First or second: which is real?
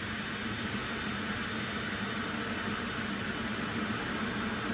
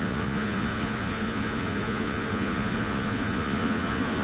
first